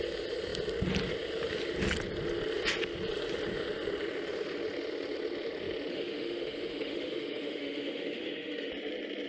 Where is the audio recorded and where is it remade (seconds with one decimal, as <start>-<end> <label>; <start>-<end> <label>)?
0.0-5.9 recorded; 5.9-8.7 remade; 8.7-9.3 recorded